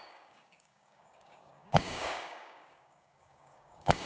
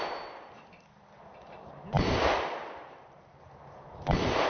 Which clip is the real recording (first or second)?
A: second